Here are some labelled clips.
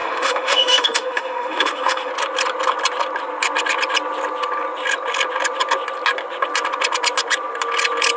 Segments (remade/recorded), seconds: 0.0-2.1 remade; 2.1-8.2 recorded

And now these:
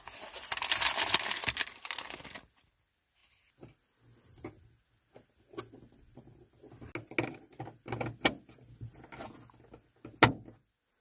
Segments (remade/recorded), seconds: 0.0-11.0 recorded

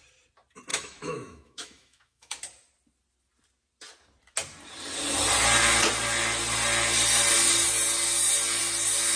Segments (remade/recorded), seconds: 0.0-0.7 recorded; 0.7-2.4 remade; 2.4-9.2 recorded

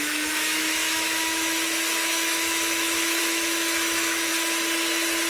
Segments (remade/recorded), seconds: 0.0-4.3 remade; 4.3-5.3 recorded

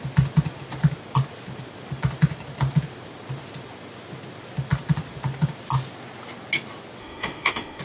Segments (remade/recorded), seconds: 0.0-7.0 recorded; 7.0-7.8 remade